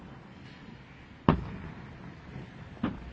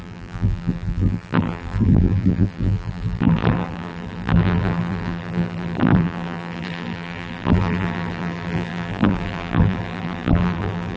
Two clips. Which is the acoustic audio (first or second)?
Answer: first